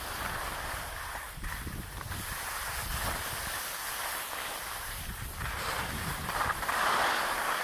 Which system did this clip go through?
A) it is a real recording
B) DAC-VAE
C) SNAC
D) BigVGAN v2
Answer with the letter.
D